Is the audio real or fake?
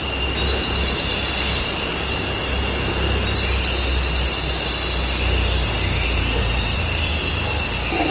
real